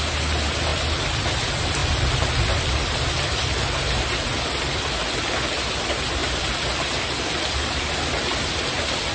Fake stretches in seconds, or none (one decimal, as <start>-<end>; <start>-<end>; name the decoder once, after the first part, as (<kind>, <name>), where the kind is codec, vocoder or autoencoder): 1.8-5.7 (vocoder, BigVGAN v2); 6.2-7.4